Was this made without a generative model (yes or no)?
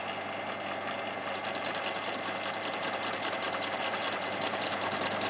yes